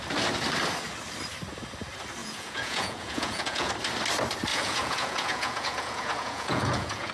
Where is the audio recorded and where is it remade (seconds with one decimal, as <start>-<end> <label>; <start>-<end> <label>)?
0.0-2.2 recorded; 2.2-3.7 remade; 3.7-4.5 recorded; 4.5-7.1 remade